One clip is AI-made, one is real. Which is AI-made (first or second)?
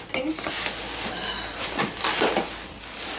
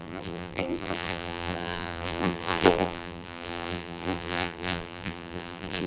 second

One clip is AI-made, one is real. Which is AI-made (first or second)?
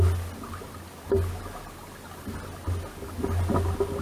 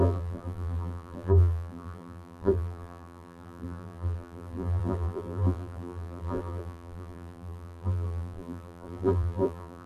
second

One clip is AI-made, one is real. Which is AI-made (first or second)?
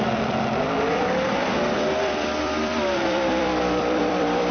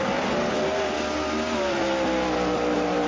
first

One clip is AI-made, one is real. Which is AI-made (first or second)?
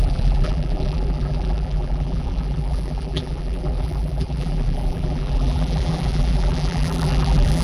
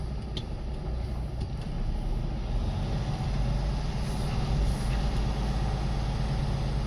first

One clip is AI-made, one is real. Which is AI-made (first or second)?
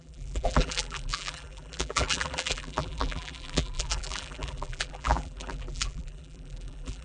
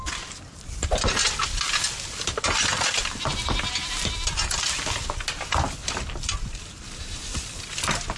first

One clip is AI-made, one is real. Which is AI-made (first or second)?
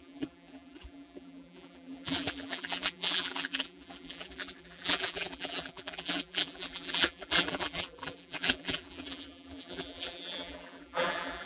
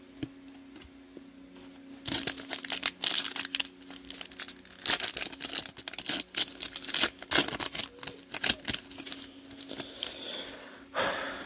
first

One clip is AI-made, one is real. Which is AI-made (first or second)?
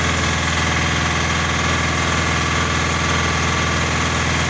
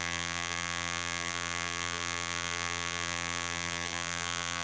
second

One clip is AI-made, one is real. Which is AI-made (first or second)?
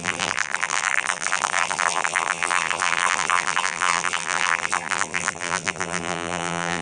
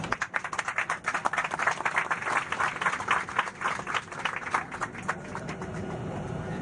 first